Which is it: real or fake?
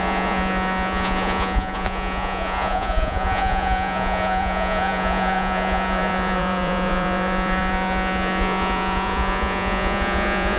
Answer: fake